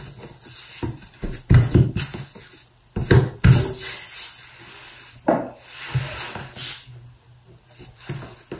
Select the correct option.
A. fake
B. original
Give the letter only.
B